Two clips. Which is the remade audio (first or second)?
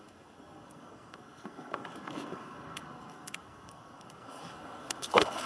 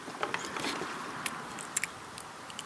first